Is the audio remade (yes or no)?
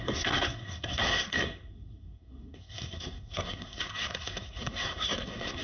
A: yes